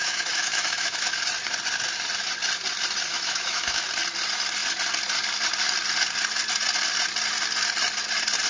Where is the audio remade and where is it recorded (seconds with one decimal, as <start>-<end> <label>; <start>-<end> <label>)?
0.0-1.2 remade; 1.2-3.1 recorded; 3.1-3.8 remade; 3.8-8.5 recorded